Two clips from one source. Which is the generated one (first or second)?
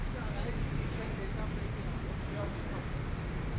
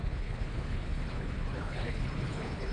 second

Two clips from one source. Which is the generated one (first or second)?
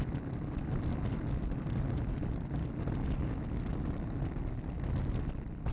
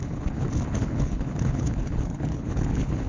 second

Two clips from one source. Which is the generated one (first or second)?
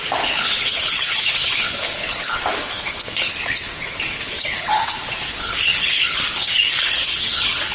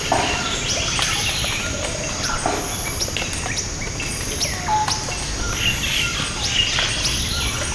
first